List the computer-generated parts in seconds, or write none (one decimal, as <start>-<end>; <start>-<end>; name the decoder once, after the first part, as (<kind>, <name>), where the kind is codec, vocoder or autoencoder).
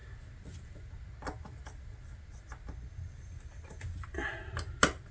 none